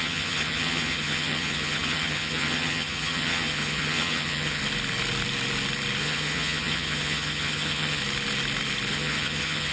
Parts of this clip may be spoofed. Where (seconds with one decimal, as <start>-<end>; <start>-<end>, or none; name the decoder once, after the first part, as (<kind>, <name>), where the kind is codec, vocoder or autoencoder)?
0.0-4.6 (vocoder, HiFi-GAN); 6.0-8.0; 8.9-9.7